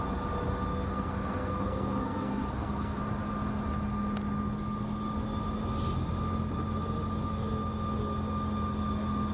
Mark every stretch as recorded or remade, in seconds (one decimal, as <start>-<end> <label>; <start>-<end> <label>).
0.0-0.7 recorded; 0.7-3.0 remade; 3.0-9.3 recorded